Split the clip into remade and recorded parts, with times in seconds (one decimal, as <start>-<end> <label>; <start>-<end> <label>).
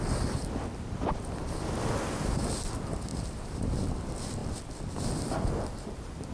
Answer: 0.0-3.1 recorded; 3.1-3.7 remade; 3.7-6.3 recorded